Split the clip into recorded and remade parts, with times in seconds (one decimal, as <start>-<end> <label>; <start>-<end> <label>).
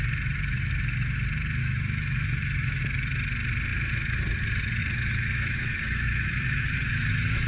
0.0-1.6 recorded; 1.6-2.8 remade; 2.8-4.8 recorded; 4.8-7.5 remade